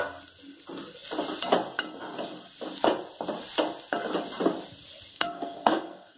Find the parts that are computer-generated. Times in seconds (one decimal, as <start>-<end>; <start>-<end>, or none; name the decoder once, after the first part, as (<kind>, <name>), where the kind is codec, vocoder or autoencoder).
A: 5.1-6.2 (codec, SNAC)